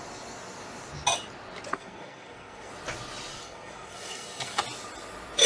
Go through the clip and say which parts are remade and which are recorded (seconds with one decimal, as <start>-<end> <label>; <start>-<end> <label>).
0.0-1.7 recorded; 1.7-2.7 remade; 2.7-3.3 recorded; 3.3-4.6 remade; 4.6-5.5 recorded